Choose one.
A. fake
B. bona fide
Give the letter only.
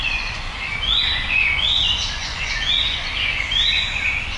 A